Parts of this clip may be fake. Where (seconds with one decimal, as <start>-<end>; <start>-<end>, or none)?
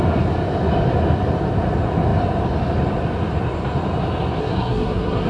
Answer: 4.4-5.3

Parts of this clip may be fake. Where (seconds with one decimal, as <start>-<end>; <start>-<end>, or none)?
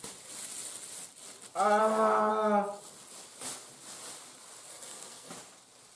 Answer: 1.8-2.3; 4.7-5.3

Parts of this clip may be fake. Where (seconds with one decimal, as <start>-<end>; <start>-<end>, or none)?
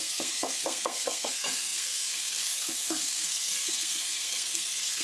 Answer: 0.0-5.0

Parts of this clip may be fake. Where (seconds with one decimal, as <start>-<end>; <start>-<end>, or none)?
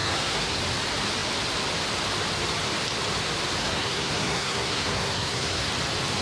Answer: 0.0-0.6; 3.6-5.7